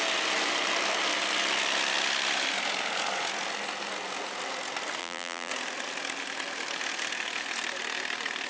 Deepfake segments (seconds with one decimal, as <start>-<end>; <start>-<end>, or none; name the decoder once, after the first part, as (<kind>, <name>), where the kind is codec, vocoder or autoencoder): 5.0-5.5 (vocoder, BigVGAN v2)